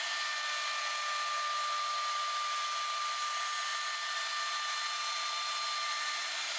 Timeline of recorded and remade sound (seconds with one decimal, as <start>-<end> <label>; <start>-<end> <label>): 0.0-6.6 recorded